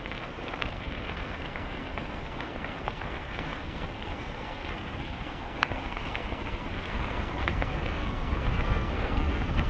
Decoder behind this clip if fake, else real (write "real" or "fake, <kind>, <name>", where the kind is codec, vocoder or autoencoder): fake, codec, SNAC